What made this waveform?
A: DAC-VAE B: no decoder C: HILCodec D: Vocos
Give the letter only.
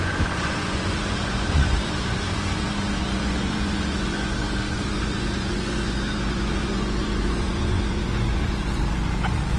D